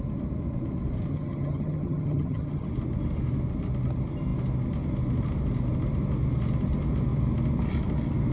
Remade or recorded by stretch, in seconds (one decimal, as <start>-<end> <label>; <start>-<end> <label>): 0.0-1.1 recorded; 1.1-2.7 remade; 2.7-8.3 recorded